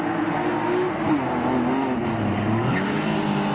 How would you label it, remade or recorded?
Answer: recorded